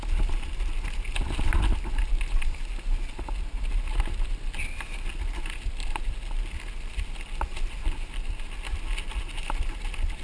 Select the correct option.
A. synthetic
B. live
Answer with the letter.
B